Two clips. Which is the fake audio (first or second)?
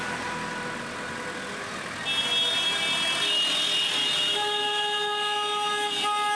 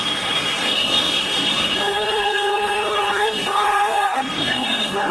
second